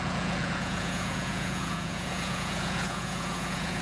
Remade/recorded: remade